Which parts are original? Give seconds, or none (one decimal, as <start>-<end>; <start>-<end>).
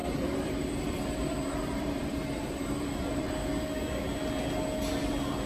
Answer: 3.3-5.5